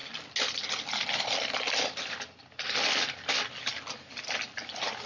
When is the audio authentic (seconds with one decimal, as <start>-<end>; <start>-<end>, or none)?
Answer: 0.0-5.1